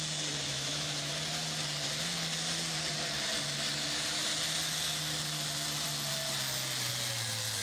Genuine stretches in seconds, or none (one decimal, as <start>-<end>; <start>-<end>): 0.0-0.5; 1.1-7.6